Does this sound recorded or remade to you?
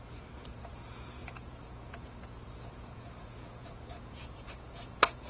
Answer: remade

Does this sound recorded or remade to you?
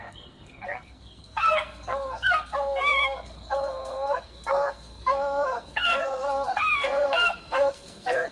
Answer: remade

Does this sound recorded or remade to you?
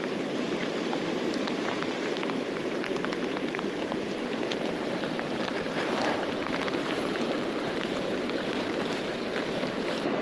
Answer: remade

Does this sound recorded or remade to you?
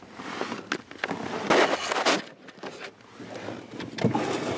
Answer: recorded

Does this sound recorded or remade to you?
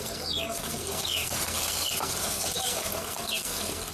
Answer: remade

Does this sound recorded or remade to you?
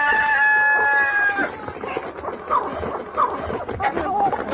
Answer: recorded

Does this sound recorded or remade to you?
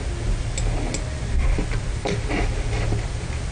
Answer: recorded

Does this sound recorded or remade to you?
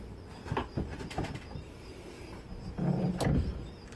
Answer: recorded